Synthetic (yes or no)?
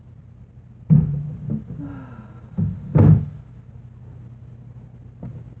no